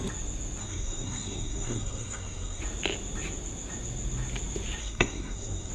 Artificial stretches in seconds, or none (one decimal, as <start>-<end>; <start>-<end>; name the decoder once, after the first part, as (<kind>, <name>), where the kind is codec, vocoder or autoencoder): 0.6-2.6 (codec, SNAC); 4.8-5.7